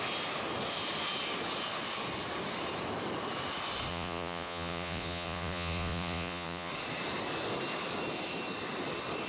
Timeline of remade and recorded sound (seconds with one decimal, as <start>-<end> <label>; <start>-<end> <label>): 0.0-3.9 recorded; 3.9-6.7 remade; 6.7-9.3 recorded